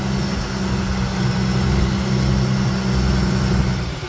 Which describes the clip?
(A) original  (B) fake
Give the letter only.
A